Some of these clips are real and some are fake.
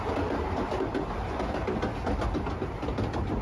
real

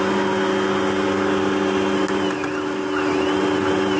real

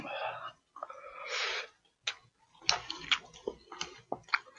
real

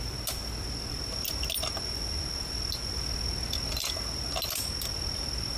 real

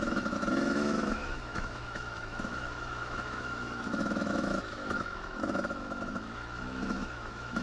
fake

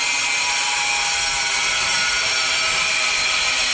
real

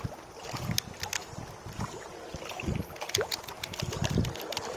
real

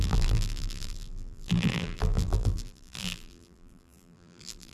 fake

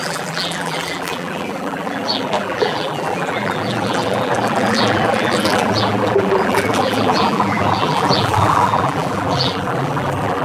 fake